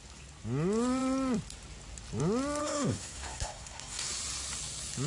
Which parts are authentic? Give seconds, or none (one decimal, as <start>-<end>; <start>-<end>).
0.0-2.6; 4.1-5.1